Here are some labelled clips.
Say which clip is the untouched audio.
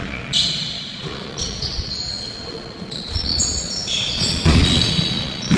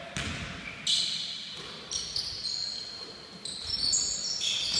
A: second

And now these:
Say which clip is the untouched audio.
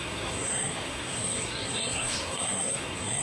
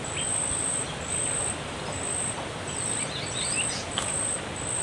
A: second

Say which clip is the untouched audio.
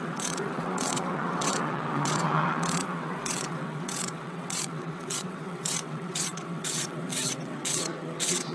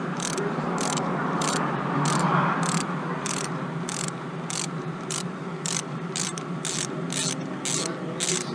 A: second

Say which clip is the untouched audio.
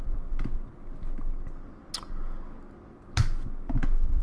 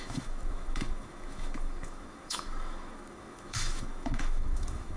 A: first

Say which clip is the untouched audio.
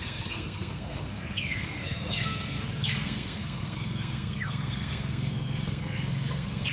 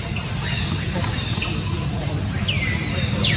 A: second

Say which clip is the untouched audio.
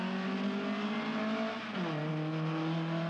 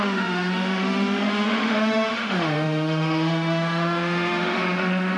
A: first